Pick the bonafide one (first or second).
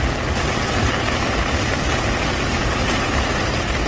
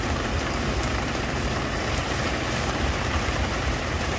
first